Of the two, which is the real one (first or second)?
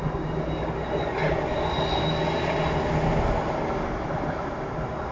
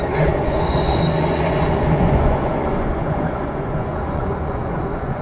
first